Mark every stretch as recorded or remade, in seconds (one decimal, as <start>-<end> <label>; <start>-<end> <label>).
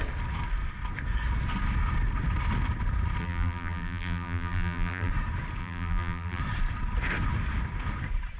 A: 0.0-3.2 recorded; 3.2-5.1 remade; 5.1-5.6 recorded; 5.6-6.4 remade; 6.4-8.4 recorded